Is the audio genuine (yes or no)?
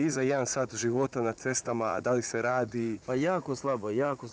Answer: no